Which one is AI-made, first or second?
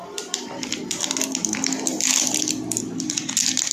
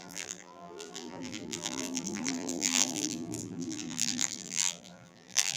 second